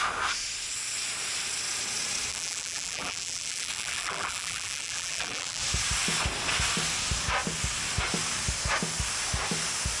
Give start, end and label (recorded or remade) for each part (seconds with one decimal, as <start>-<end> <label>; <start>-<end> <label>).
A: 0.0-2.3 recorded; 2.3-5.6 remade; 5.6-10.0 recorded